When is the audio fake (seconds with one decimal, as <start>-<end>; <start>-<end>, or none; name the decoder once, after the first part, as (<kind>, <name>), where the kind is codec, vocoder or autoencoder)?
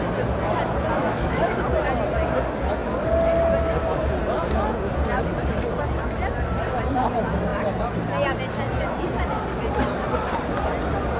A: 1.0-1.6 (autoencoder, DAC-VAE)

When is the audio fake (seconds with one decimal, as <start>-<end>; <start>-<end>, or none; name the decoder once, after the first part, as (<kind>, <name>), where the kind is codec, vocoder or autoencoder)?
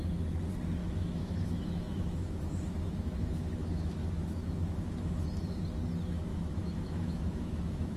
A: 0.8-5.2 (autoencoder, DAC-VAE); 6.3-8.0